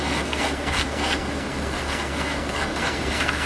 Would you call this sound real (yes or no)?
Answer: no